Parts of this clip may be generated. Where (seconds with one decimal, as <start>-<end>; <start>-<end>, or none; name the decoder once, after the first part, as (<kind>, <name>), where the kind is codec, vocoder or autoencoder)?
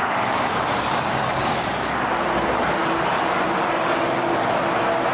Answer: 0.0-2.1 (codec, DAC); 2.8-3.9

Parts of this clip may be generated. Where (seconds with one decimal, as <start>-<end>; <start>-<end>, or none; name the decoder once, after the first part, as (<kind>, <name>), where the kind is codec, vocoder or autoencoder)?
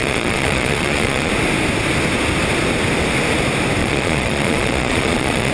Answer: 0.0-1.3 (vocoder, Vocos); 3.8-5.5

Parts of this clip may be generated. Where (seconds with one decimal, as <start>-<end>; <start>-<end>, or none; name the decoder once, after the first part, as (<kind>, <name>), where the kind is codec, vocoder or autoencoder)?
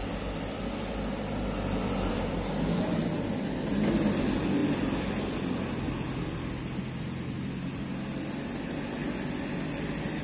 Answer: none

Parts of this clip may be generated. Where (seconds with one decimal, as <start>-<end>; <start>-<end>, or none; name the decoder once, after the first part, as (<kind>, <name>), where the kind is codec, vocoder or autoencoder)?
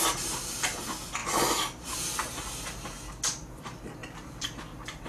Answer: 4.0-4.6 (vocoder, BigVGAN v2)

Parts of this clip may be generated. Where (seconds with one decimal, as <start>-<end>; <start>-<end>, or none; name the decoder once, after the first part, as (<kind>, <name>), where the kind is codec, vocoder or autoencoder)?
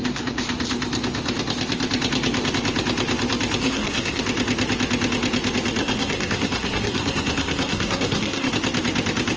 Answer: 3.6-4.2 (codec, SNAC); 5.8-8.5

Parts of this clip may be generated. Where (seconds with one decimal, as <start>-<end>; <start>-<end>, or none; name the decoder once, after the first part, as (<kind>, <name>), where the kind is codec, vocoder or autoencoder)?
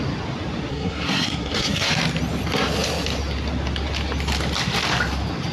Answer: 0.7-1.9 (codec, SNAC)